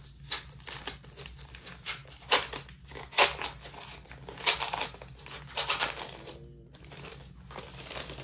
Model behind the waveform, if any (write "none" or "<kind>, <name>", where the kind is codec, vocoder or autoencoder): none